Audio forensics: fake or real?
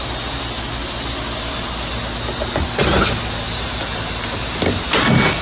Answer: real